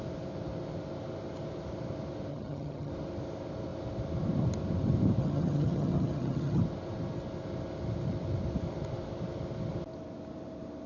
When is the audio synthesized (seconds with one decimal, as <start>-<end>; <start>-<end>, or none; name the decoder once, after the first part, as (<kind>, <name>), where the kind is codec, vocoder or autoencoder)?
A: 2.3-2.9 (vocoder, HiFi-GAN); 5.2-6.6